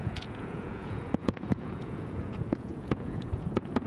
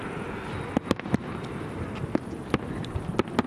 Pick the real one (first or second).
second